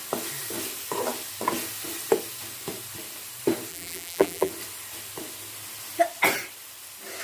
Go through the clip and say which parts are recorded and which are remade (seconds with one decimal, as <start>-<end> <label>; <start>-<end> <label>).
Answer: 0.0-3.7 recorded; 3.7-4.5 remade; 4.5-7.2 recorded